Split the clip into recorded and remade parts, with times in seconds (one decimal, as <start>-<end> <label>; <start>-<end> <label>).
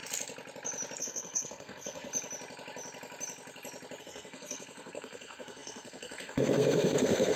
0.0-1.0 recorded; 1.0-2.1 remade; 2.1-4.0 recorded; 4.0-7.4 remade